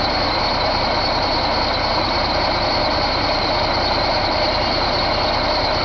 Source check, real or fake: real